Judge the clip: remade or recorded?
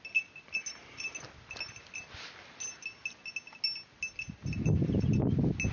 recorded